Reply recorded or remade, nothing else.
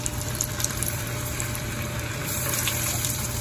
remade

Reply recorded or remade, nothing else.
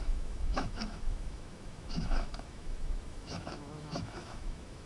remade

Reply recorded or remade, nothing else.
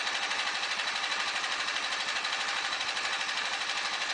recorded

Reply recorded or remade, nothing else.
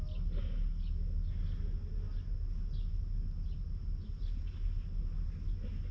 recorded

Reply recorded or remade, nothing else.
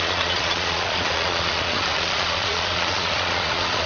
remade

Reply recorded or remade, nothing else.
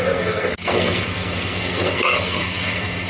remade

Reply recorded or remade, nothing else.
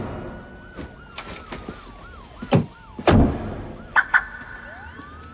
recorded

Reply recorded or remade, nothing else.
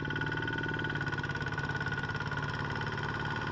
recorded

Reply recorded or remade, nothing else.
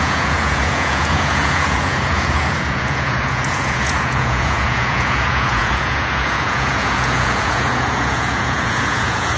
remade